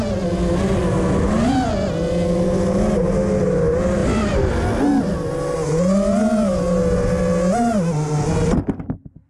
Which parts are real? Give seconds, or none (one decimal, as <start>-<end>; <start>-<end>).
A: 0.0-4.0; 4.5-9.3